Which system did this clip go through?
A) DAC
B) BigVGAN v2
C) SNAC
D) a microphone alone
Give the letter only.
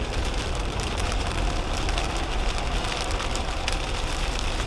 B